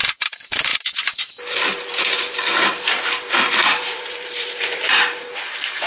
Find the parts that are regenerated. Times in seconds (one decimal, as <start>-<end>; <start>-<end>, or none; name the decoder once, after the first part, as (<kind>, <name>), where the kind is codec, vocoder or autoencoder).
0.0-5.9 (vocoder, BigVGAN v2)